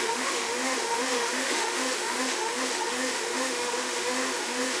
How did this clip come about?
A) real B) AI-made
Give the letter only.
B